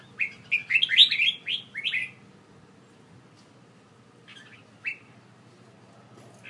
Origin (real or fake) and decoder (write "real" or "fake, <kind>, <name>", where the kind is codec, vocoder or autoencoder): real